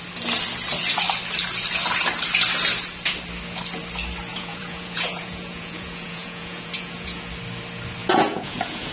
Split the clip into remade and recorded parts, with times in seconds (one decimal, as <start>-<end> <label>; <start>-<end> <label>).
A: 0.0-4.3 recorded; 4.3-7.3 remade; 7.3-8.0 recorded; 8.0-8.9 remade